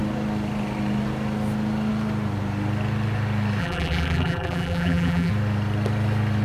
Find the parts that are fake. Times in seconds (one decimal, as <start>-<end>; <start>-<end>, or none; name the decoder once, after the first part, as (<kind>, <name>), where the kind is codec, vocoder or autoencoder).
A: 3.6-5.3 (vocoder, BigVGAN v2)